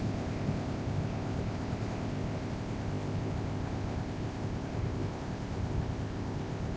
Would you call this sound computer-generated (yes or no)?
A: yes